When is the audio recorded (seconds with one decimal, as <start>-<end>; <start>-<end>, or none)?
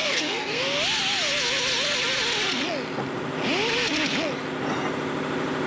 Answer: 0.6-5.7